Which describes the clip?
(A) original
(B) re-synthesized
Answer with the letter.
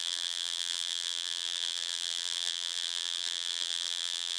B